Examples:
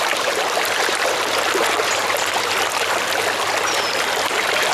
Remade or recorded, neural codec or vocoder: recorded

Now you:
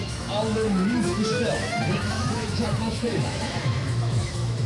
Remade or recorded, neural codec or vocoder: remade, autoencoder, DAC-VAE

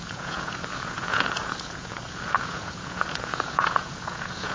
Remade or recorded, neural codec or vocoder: remade, vocoder, Vocos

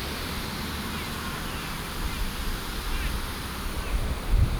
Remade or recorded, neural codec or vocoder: recorded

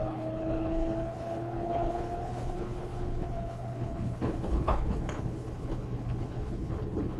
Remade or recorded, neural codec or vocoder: remade, codec, HILCodec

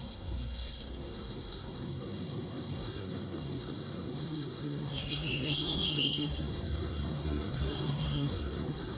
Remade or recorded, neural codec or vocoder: remade, codec, SNAC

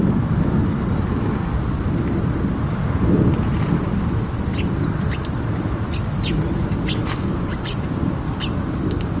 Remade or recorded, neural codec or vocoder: recorded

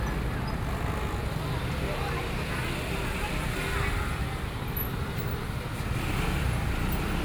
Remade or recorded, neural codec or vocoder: recorded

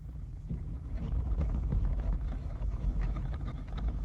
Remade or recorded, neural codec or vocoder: remade, autoencoder, DAC-VAE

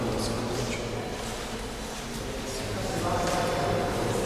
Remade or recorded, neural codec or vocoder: recorded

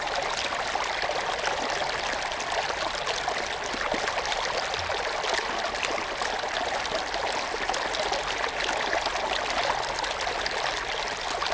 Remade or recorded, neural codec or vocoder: recorded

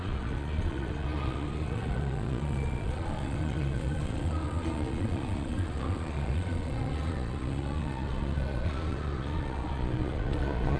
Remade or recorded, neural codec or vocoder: remade, vocoder, Vocos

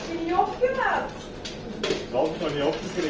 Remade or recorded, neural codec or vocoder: recorded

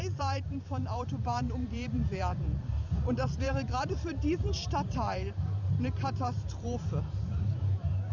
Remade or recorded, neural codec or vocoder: remade, vocoder, BigVGAN v2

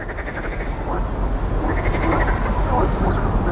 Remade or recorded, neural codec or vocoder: recorded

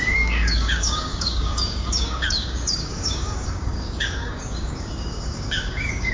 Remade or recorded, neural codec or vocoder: remade, codec, DAC